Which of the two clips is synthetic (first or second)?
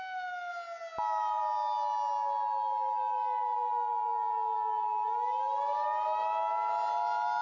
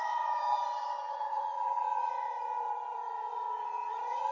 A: second